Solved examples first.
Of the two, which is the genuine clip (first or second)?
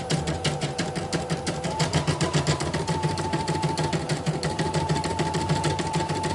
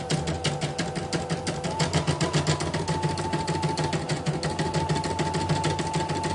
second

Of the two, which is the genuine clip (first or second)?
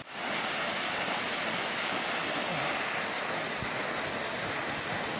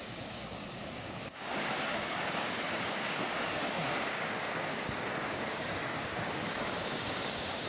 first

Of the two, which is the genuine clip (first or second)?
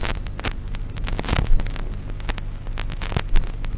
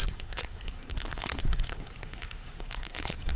first